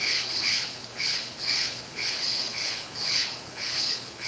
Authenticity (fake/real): fake